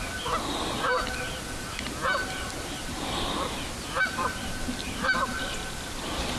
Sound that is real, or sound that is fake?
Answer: real